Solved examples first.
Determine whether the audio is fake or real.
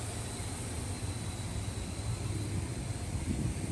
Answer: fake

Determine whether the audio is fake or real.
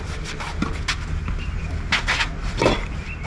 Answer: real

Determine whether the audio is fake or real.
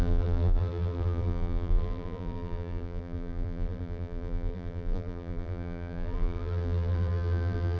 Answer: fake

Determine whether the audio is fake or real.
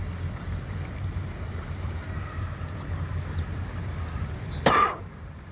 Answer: fake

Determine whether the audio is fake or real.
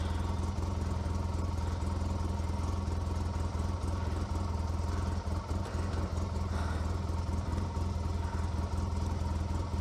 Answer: real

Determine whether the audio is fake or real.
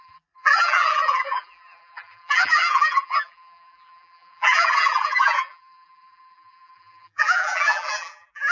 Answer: fake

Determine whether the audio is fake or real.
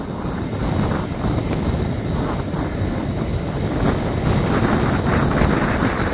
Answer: real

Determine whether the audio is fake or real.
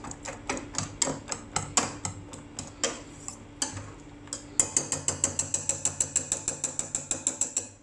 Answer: real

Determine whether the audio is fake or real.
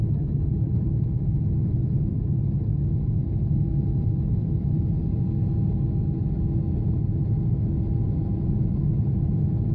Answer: real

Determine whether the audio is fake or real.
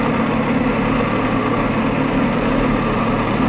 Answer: real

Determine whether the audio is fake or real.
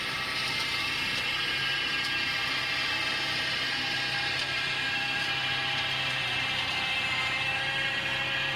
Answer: fake